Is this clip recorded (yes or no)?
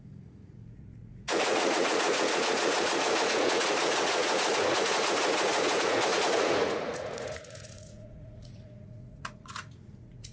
no